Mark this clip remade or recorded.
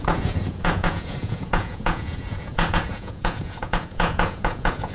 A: remade